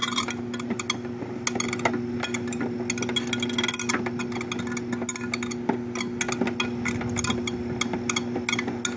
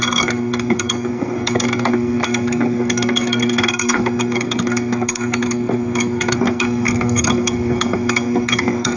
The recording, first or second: first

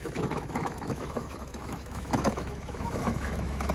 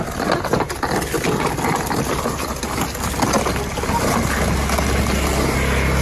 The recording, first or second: second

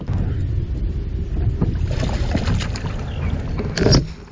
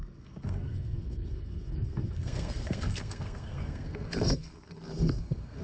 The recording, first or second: first